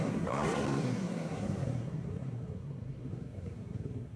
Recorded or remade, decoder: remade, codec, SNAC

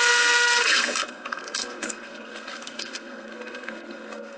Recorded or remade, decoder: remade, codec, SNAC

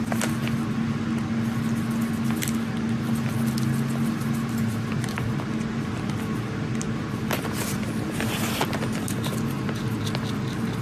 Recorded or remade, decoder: recorded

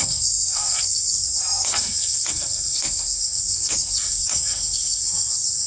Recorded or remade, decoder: remade, codec, SNAC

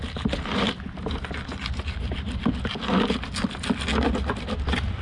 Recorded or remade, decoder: recorded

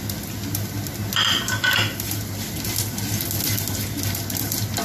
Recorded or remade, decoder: recorded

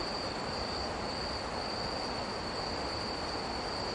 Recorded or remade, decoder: recorded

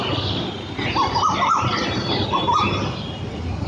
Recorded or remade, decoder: recorded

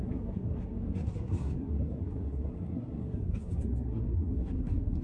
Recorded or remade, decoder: remade, codec, SNAC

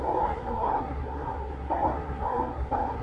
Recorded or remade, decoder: remade, codec, SNAC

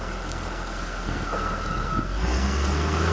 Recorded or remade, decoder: remade, codec, SNAC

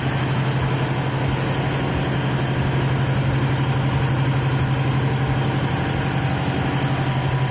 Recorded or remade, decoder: recorded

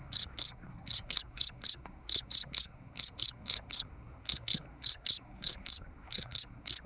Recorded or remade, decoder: remade, codec, SNAC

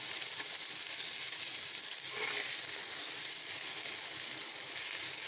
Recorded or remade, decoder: recorded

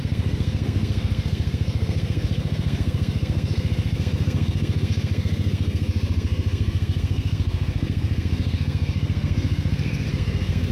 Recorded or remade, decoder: remade, codec, SNAC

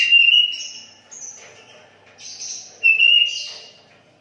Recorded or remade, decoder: recorded